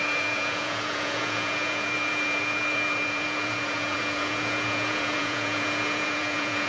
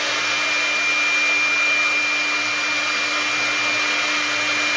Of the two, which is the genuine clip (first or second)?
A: second